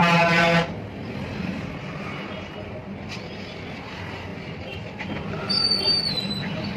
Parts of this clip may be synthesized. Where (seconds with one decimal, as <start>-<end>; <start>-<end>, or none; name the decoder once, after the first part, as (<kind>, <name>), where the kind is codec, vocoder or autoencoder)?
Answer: none